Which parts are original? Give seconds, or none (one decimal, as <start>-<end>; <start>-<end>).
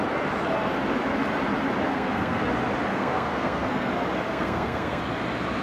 0.0-1.9; 2.4-2.9; 3.9-4.3; 5.0-5.6